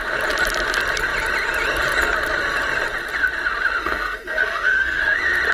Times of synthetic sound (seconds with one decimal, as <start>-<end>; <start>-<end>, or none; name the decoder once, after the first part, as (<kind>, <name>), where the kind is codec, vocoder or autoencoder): 3.8-5.0 (codec, SNAC)